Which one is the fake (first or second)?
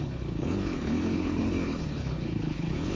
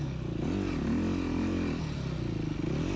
first